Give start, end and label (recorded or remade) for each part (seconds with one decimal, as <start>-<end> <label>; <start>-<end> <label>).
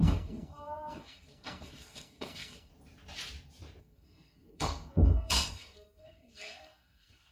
0.0-2.7 remade; 2.7-3.8 recorded; 3.8-7.3 remade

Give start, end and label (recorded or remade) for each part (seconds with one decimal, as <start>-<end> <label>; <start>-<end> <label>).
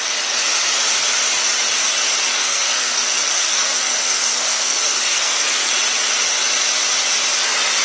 0.0-2.3 recorded; 2.3-5.7 remade; 5.7-7.8 recorded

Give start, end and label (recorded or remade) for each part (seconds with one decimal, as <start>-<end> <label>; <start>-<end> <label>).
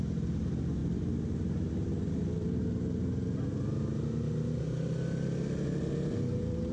0.0-6.7 recorded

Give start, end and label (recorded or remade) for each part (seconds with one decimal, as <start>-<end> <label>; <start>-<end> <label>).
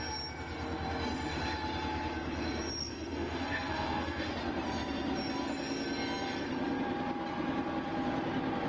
0.0-2.8 recorded; 2.8-4.3 remade; 4.3-8.7 recorded